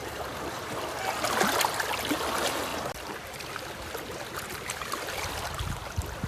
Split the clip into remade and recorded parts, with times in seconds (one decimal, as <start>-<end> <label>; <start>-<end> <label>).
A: 0.0-6.3 recorded